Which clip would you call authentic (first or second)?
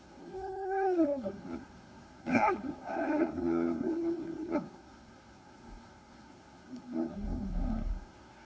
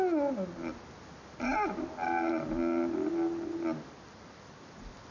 second